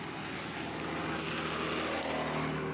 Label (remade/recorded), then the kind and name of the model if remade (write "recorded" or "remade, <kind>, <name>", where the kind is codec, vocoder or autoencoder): recorded